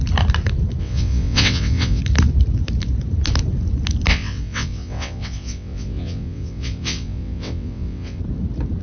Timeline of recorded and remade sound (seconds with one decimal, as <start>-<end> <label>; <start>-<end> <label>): 0.0-0.8 recorded; 0.8-2.0 remade; 2.0-4.1 recorded; 4.1-8.2 remade; 8.2-8.8 recorded